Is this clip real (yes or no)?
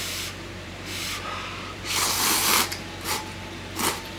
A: no